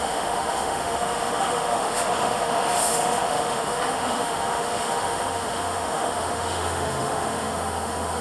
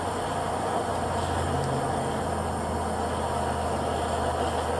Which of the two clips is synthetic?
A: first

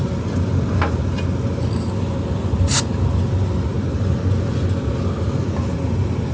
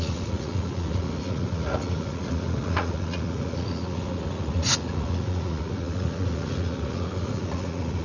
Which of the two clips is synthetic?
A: second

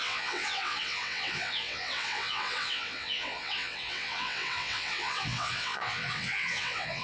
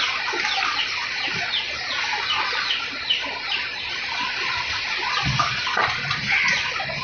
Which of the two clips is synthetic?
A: first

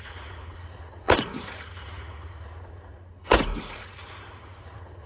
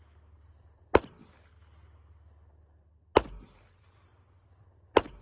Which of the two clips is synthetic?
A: first